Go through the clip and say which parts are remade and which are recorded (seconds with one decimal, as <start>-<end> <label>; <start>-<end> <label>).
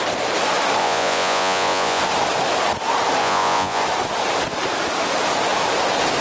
0.0-0.8 recorded; 0.8-2.0 remade; 2.0-3.2 recorded; 3.2-3.8 remade; 3.8-6.2 recorded